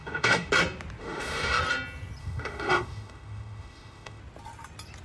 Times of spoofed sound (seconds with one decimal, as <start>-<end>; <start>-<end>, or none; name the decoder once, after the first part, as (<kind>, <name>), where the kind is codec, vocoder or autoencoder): 0.0-0.5 (autoencoder, DAC-VAE); 1.0-1.6; 2.2-4.2